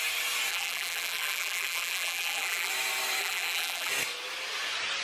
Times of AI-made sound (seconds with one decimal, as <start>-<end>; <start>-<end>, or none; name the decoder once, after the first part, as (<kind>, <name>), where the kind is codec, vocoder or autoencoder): 0.5-2.7 (vocoder, BigVGAN v2); 3.2-3.9

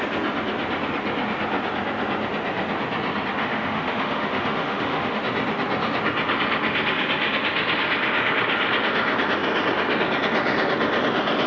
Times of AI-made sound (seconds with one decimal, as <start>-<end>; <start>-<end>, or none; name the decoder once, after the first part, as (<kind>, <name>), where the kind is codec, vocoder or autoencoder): 3.4-5.2 (autoencoder, DAC-VAE)

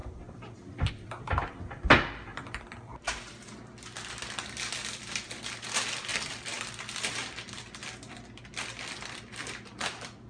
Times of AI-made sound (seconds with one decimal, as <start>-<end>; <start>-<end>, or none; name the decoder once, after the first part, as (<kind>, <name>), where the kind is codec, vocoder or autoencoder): 0.0-0.9 (vocoder, BigVGAN v2); 2.3-3.2; 6.1-6.7

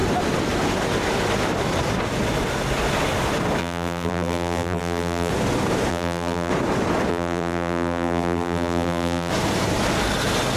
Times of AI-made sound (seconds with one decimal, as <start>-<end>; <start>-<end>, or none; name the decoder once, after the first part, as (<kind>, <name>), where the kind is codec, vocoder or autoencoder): 3.6-5.3 (vocoder, BigVGAN v2); 5.9-6.5; 7.1-9.3

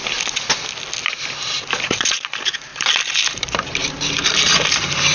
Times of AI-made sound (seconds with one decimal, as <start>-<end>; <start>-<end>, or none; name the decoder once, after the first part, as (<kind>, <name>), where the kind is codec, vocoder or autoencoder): 1.2-2.7 (vocoder, BigVGAN v2); 3.3-5.1

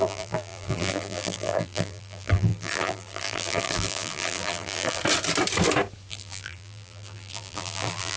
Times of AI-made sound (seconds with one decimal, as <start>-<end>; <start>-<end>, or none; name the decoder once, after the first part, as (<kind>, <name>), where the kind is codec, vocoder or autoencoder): 0.0-5.0 (vocoder, BigVGAN v2); 6.1-8.2

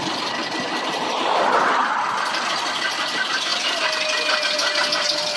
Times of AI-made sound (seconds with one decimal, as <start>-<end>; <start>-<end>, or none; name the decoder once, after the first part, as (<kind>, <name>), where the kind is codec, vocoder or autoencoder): none

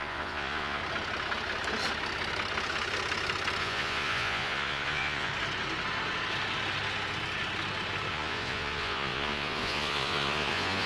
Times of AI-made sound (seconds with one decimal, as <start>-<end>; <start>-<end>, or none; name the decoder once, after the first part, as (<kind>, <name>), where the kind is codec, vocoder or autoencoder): 0.0-0.8 (vocoder, Vocos); 3.6-5.3; 8.1-10.9